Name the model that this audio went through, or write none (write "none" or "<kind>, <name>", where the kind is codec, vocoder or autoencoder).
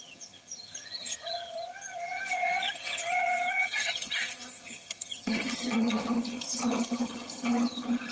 vocoder, HiFi-GAN